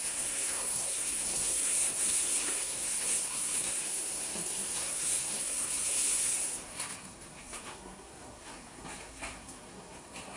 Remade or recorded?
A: remade